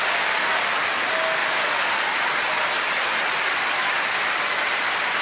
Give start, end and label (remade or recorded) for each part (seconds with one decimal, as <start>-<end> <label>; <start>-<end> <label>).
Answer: 0.0-5.2 recorded